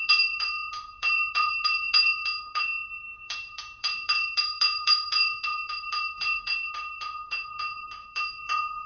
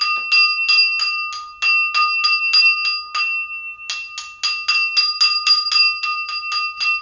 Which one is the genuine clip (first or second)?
second